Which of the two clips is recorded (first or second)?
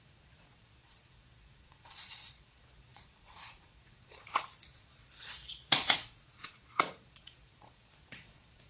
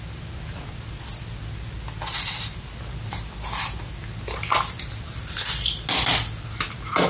second